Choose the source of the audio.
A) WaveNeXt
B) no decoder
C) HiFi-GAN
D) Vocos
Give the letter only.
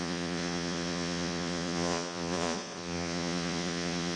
D